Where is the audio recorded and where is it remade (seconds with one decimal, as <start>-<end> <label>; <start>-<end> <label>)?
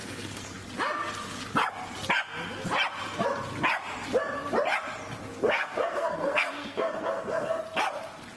0.0-0.5 remade; 0.5-5.4 recorded; 5.4-7.6 remade; 7.6-8.4 recorded